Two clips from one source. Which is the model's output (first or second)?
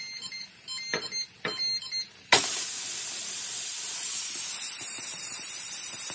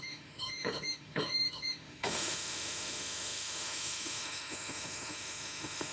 second